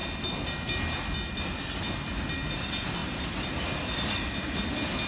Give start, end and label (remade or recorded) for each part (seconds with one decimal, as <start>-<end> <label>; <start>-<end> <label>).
0.0-5.1 recorded